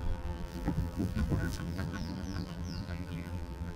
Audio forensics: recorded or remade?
remade